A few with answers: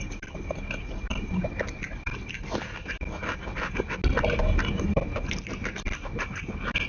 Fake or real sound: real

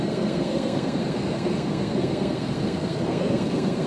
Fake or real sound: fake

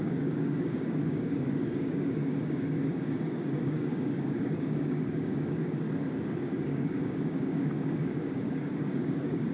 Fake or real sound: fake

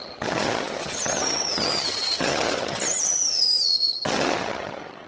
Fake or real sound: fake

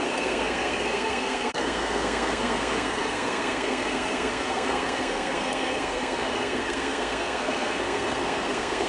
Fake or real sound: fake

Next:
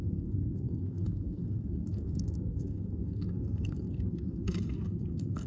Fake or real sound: fake